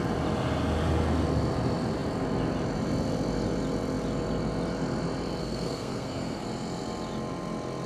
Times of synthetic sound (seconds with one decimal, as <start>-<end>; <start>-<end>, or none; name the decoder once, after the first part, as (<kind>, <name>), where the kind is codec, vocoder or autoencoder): 5.4-6.4 (codec, SNAC)